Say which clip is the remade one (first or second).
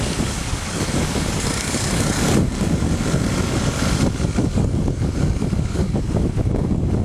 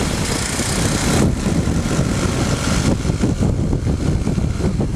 first